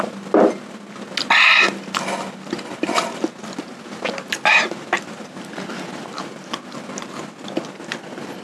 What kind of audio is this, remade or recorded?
recorded